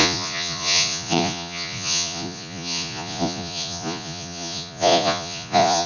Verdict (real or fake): fake